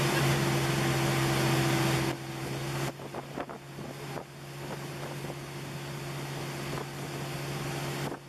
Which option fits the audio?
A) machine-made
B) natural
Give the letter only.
B